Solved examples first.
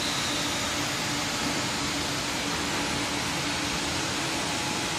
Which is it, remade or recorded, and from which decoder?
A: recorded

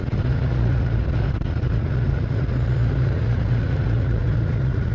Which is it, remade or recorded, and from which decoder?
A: remade, vocoder, Vocos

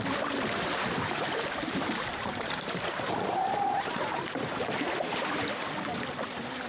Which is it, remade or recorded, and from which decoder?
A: remade, vocoder, BigVGAN v2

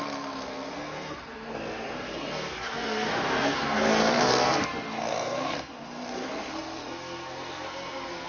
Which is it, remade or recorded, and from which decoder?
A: remade, codec, SNAC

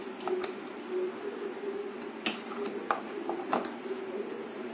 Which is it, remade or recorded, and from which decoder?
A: recorded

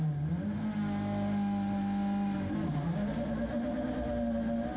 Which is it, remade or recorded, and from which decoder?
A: recorded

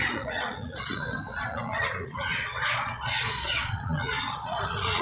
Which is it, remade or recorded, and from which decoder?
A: remade, vocoder, Vocos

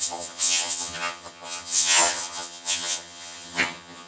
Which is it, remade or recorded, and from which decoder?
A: remade, vocoder, HiFi-GAN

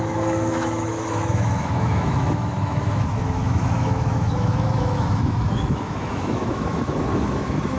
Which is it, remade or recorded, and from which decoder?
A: remade, autoencoder, DAC-VAE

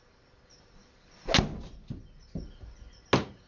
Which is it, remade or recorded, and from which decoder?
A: recorded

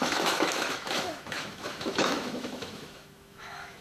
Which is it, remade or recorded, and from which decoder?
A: remade, autoencoder, DAC-VAE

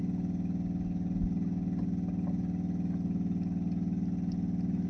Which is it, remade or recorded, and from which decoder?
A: recorded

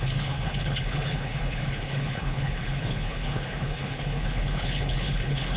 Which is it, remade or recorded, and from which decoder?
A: remade, codec, HILCodec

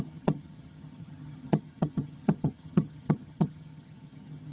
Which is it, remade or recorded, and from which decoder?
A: remade, vocoder, HiFi-GAN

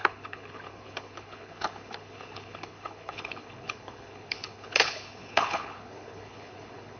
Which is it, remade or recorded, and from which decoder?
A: remade, codec, HILCodec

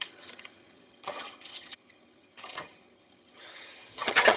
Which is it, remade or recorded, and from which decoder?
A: remade, vocoder, HiFi-GAN